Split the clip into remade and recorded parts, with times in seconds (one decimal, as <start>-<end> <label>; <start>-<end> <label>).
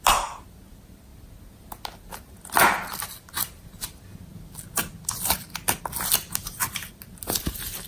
0.0-7.9 recorded